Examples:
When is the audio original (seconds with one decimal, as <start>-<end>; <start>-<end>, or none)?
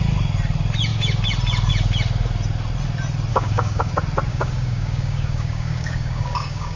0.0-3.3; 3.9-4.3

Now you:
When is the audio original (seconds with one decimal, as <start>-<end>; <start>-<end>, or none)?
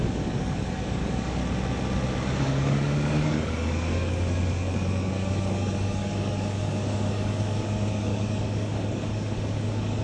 1.4-2.4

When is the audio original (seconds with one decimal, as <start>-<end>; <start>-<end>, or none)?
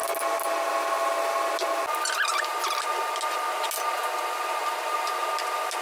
0.0-5.8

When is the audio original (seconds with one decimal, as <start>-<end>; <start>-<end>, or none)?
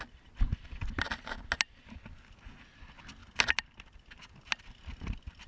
0.0-5.5